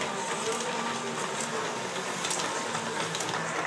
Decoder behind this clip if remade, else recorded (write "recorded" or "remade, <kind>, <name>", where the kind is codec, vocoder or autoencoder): recorded